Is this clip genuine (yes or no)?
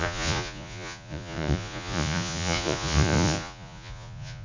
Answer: no